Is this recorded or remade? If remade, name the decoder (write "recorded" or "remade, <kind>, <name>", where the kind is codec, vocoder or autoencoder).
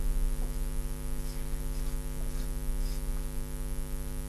recorded